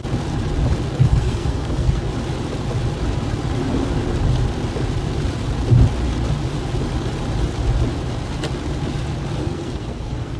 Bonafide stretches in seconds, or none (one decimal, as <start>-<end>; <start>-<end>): 0.0-0.9; 2.0-9.4